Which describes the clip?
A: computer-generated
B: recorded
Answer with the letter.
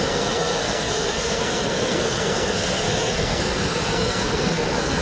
A